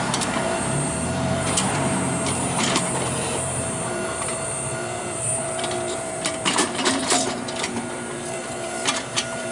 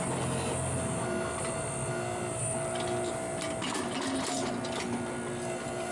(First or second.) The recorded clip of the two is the second